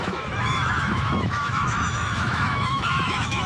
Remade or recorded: remade